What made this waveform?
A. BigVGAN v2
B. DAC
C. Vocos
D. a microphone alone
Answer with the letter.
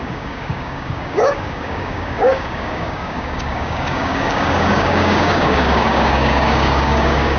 B